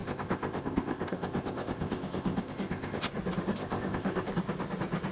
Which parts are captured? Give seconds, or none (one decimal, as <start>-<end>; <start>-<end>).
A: 3.1-3.5; 4.3-5.1